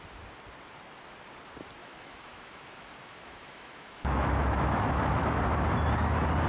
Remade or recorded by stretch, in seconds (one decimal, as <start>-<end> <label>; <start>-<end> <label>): 0.0-1.8 recorded; 1.8-5.4 remade; 5.4-6.5 recorded